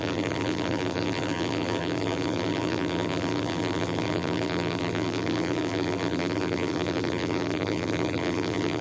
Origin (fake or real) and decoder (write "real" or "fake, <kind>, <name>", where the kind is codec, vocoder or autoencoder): fake, vocoder, BigVGAN v2